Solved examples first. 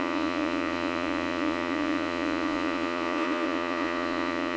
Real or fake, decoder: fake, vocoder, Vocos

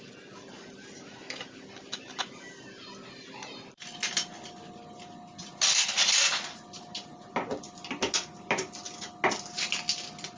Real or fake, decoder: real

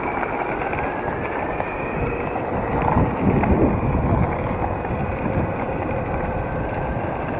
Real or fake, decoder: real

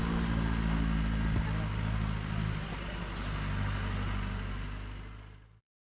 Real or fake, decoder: real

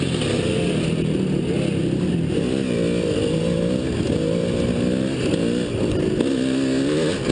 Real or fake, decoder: real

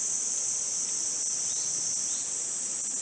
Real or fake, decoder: real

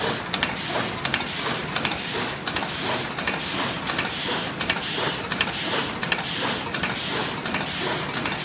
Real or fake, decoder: real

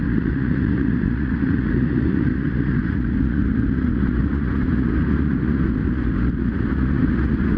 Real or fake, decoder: fake, vocoder, Vocos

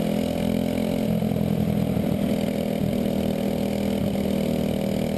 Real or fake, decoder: real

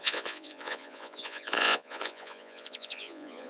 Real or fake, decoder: fake, vocoder, Vocos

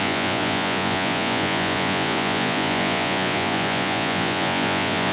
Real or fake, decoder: fake, vocoder, Vocos